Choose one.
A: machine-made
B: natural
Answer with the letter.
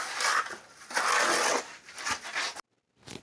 B